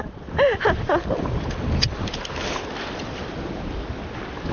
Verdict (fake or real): real